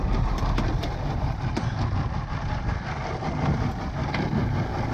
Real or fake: real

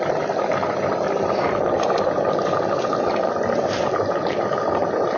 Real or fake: fake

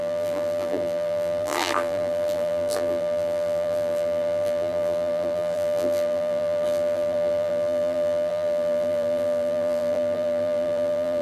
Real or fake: fake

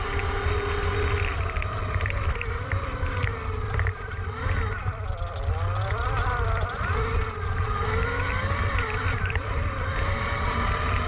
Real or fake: real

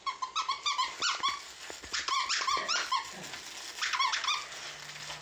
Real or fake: real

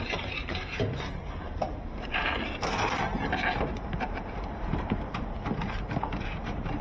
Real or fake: fake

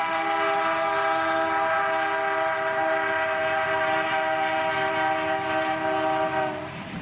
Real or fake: real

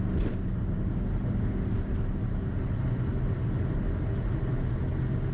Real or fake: real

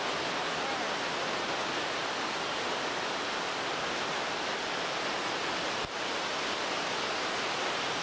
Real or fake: real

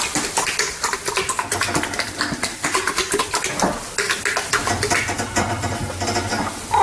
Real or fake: real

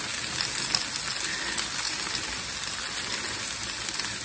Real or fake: real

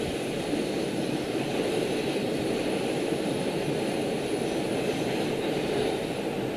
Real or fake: real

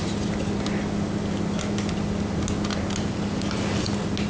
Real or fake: real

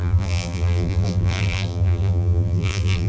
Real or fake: fake